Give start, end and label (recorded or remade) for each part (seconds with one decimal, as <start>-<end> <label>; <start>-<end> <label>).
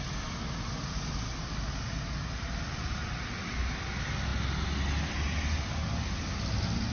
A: 0.0-6.9 recorded